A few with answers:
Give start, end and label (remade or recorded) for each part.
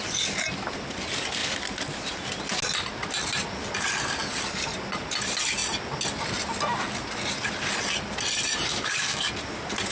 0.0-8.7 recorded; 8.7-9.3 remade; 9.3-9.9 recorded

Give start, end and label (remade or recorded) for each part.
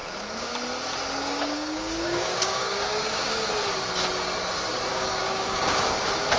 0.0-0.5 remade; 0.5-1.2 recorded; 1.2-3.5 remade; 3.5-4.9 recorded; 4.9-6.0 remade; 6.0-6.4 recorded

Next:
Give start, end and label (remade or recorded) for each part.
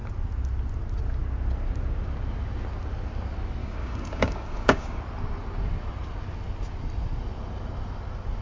0.0-3.6 recorded; 3.6-5.0 remade; 5.0-8.4 recorded